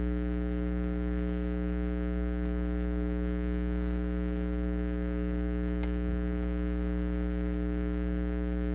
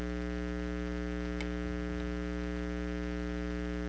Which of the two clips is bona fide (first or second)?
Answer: second